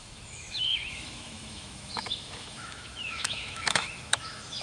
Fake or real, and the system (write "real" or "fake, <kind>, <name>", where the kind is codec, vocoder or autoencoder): fake, autoencoder, DAC-VAE